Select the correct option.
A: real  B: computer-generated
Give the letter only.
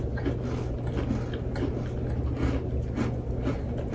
A